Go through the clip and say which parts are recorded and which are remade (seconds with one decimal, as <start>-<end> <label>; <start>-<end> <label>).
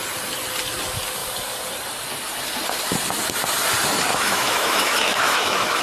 0.0-4.1 recorded; 4.1-5.8 remade